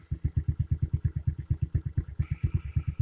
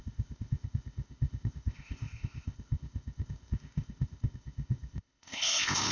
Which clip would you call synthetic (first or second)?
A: second